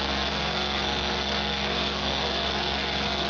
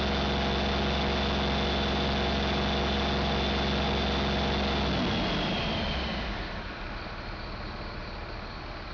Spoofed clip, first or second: first